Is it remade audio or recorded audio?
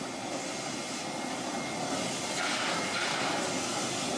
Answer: recorded